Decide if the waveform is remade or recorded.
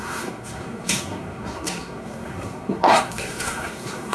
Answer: remade